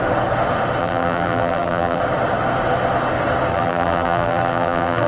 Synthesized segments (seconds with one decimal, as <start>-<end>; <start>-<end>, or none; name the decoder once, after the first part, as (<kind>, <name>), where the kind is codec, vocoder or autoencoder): 0.8-2.0 (vocoder, BigVGAN v2); 3.5-5.1